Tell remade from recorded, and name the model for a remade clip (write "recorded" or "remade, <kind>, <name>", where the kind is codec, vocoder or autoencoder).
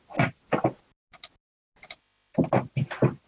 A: recorded